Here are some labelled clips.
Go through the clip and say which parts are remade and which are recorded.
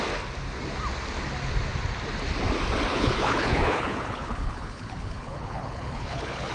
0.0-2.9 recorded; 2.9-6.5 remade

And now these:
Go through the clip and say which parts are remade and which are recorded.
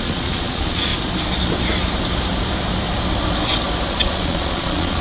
0.0-0.9 remade; 0.9-3.9 recorded; 3.9-5.0 remade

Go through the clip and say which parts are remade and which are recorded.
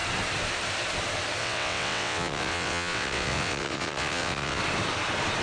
0.0-1.4 recorded; 1.4-4.6 remade; 4.6-5.4 recorded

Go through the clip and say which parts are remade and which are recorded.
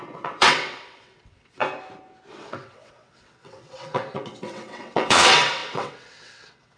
0.0-1.6 remade; 1.6-2.3 recorded; 2.3-6.8 remade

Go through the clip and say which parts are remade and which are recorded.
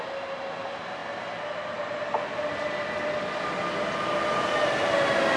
0.0-5.4 recorded